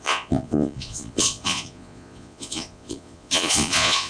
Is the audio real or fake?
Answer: fake